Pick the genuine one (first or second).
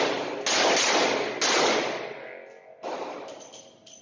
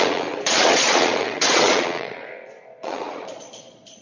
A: first